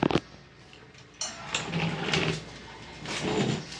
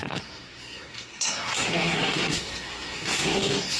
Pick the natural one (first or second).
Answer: first